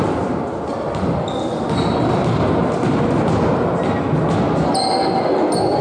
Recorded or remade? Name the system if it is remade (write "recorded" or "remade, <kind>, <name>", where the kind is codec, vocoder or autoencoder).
recorded